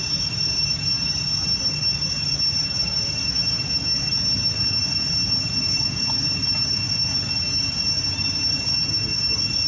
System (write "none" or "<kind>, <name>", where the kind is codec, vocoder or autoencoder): none